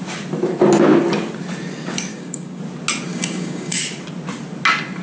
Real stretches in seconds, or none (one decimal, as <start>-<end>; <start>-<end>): 0.0-2.1; 2.6-3.1; 3.8-5.0